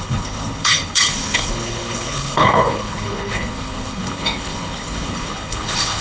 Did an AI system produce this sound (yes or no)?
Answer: yes